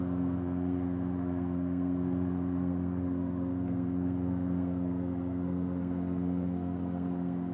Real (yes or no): no